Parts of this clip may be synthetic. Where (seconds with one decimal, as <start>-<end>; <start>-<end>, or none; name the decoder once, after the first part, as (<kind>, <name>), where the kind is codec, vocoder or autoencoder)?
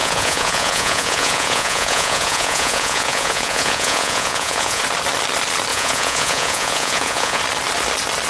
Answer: 0.0-4.8 (vocoder, Vocos); 5.7-7.4